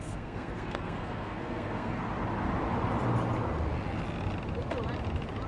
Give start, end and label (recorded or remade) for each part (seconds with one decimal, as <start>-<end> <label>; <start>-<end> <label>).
0.0-2.0 remade; 2.0-5.5 recorded